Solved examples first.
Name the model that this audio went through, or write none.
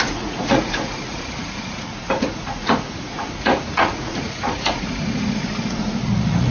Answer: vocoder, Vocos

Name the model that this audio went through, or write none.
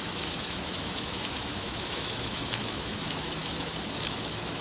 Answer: autoencoder, DAC-VAE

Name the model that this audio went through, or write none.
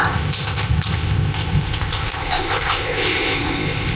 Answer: codec, ZipCodec